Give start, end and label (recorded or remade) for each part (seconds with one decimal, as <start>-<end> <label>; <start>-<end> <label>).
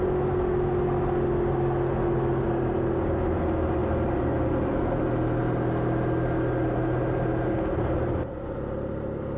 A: 0.0-9.4 recorded